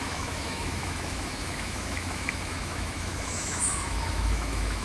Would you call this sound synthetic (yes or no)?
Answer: yes